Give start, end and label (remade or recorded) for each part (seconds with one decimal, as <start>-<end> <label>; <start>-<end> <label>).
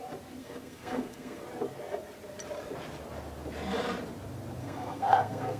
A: 0.0-0.4 recorded; 0.4-1.4 remade; 1.4-4.6 recorded; 4.6-5.6 remade